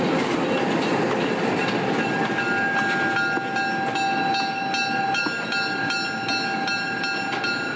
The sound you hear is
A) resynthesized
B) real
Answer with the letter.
B